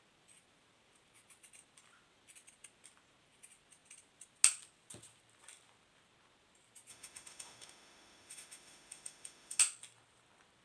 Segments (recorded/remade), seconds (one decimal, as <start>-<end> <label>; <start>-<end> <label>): 0.0-6.9 recorded; 6.9-9.6 remade; 9.6-10.6 recorded

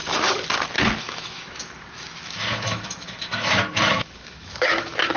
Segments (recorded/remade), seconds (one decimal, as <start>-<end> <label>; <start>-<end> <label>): 0.0-1.0 recorded; 1.0-5.2 remade

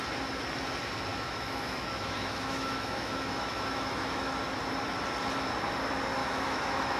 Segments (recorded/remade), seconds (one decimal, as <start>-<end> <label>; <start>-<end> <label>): 0.0-1.1 recorded; 1.1-4.3 remade; 4.3-6.2 recorded; 6.2-7.0 remade